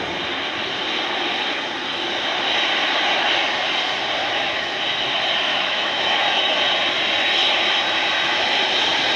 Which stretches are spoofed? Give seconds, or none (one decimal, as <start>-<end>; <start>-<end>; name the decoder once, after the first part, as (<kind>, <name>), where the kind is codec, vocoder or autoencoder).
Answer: 4.2-4.8 (autoencoder, DAC-VAE); 5.5-6.6